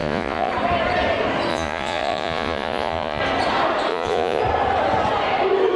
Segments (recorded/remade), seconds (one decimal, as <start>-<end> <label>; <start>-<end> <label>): 0.0-0.5 remade; 0.5-1.5 recorded; 1.5-3.2 remade; 3.2-3.9 recorded; 3.9-4.4 remade; 4.4-5.8 recorded